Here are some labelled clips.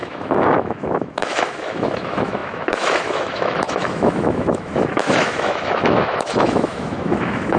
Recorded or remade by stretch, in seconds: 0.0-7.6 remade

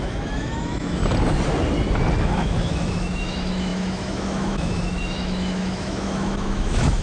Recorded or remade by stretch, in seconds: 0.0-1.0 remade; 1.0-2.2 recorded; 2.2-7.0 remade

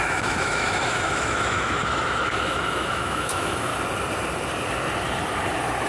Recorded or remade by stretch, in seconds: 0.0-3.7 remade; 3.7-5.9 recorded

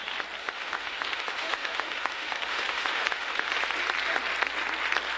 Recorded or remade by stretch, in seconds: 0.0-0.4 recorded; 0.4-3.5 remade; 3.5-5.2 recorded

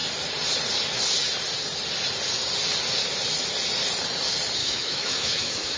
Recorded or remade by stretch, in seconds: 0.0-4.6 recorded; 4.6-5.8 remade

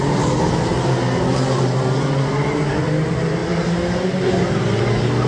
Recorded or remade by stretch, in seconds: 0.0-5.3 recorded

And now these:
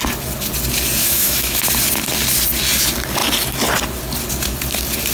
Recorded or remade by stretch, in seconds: 0.0-1.0 recorded; 1.0-1.6 remade; 1.6-5.1 recorded

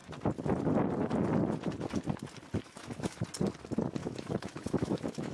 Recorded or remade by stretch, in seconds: 0.0-2.6 recorded; 2.6-3.2 remade; 3.2-4.0 recorded; 4.0-5.3 remade